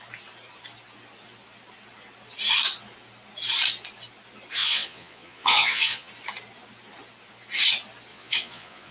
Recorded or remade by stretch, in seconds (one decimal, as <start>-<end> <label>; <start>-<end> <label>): 0.0-4.6 recorded; 4.6-6.1 remade; 6.1-8.1 recorded; 8.1-8.9 remade